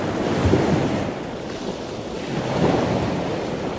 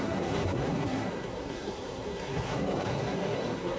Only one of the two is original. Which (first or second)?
first